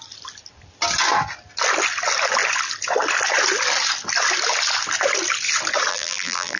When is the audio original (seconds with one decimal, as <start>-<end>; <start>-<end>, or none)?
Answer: 0.0-5.9